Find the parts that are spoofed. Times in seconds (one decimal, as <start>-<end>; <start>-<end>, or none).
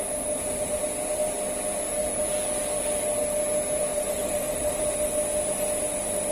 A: 3.9-4.8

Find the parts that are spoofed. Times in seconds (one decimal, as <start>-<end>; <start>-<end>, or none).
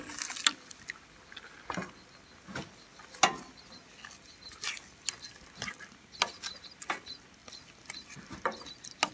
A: none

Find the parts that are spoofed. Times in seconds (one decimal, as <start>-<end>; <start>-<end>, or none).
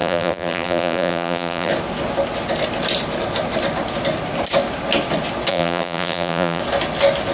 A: 0.0-1.7; 5.5-6.6